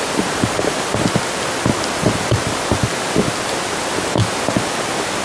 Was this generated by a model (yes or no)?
no